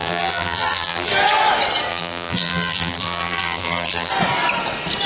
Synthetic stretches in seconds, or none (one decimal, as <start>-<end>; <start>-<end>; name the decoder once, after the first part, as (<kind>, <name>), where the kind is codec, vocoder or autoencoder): 0.0-1.1 (vocoder, BigVGAN v2); 1.9-4.1